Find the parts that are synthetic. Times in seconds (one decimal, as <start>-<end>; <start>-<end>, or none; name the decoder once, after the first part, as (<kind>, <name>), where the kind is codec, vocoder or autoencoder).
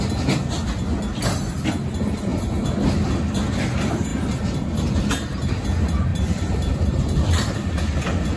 6.1-8.4 (vocoder, BigVGAN v2)